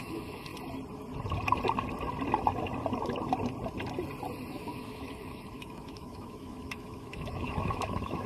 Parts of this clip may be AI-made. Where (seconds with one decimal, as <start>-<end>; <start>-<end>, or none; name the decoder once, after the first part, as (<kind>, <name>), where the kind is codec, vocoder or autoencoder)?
0.0-0.5 (autoencoder, DAC-VAE); 4.5-8.3